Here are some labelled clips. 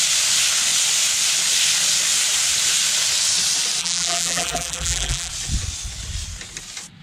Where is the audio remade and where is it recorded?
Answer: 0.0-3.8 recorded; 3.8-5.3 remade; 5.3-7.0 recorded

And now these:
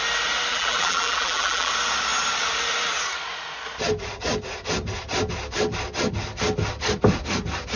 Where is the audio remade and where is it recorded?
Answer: 0.0-0.5 recorded; 0.5-1.7 remade; 1.7-7.8 recorded